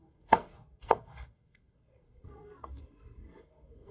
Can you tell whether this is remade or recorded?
remade